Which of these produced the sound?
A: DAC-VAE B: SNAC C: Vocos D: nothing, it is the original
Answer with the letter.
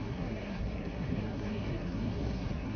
B